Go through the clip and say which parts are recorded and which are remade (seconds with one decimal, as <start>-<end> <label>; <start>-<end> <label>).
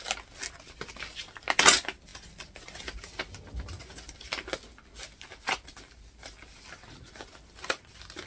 0.0-8.3 recorded